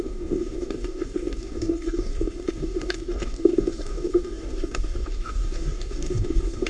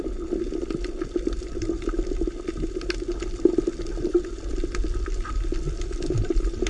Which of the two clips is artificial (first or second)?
first